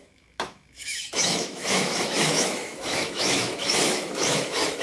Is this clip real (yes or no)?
no